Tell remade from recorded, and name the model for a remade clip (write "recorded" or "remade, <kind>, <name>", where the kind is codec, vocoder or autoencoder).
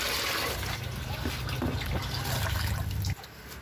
recorded